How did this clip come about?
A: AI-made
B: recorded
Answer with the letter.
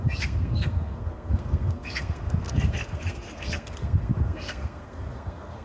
A